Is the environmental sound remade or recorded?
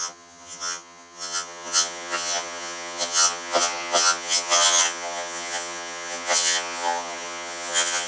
remade